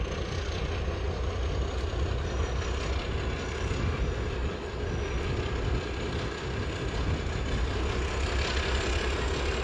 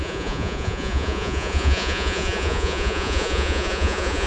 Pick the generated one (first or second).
second